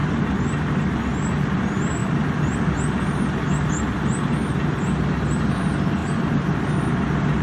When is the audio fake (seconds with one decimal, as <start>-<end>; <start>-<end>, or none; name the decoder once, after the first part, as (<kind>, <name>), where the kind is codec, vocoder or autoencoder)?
none